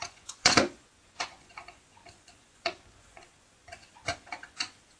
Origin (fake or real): fake